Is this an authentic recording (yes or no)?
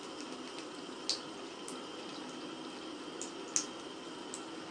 yes